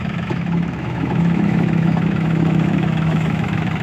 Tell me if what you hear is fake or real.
fake